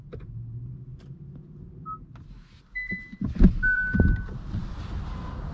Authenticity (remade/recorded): recorded